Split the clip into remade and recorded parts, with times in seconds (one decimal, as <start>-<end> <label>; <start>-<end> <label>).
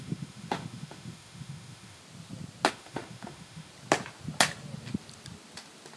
0.0-2.0 remade; 2.0-2.7 recorded; 2.7-3.7 remade; 3.7-6.0 recorded